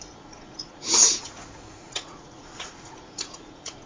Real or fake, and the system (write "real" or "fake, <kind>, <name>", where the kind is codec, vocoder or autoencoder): fake, vocoder, Vocos